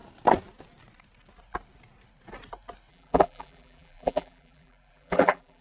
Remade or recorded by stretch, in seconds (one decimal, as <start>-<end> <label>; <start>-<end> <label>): 0.0-2.9 recorded; 2.9-5.6 remade